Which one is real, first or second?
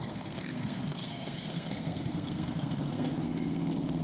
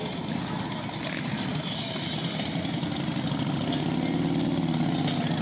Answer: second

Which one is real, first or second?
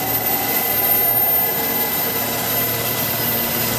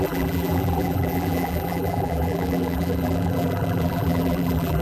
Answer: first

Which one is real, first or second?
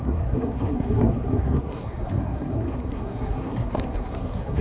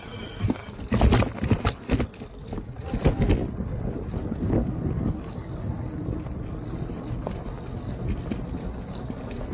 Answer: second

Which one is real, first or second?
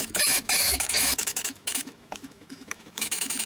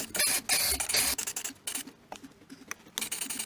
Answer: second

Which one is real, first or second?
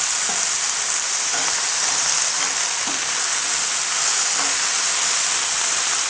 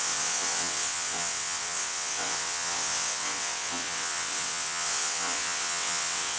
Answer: first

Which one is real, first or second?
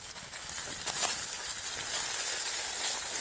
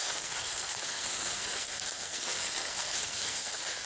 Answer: first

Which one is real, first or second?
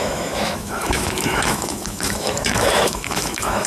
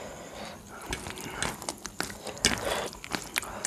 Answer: second